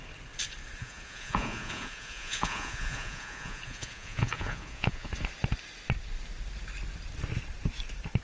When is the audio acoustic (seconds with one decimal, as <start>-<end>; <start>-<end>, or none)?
0.0-0.8; 5.1-8.2